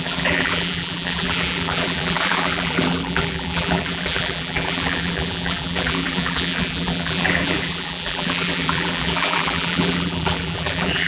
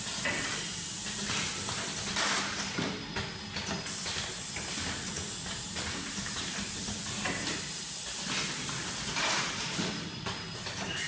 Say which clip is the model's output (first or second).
first